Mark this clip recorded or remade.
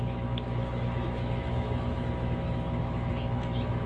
remade